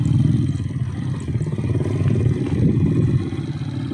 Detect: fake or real real